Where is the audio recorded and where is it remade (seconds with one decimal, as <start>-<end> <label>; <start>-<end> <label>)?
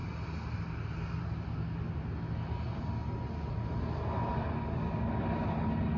0.0-6.0 recorded